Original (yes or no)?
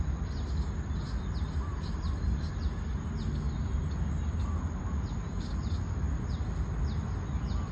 yes